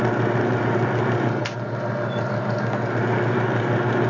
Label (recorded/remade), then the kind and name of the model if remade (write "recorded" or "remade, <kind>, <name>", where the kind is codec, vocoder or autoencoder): recorded